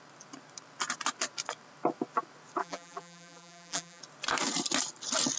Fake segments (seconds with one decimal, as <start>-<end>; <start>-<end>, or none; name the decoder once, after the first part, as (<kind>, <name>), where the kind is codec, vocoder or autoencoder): 2.6-4.0 (vocoder, BigVGAN v2)